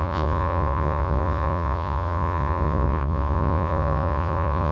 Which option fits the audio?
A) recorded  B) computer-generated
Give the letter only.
B